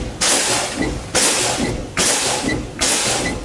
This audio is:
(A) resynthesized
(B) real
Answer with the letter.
A